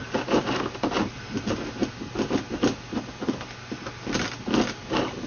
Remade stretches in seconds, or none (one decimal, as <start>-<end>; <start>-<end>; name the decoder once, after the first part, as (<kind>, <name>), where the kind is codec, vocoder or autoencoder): none